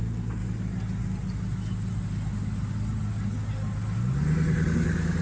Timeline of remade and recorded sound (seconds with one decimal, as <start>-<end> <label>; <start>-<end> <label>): 0.0-5.2 recorded